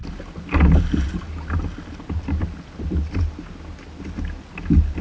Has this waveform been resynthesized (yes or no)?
no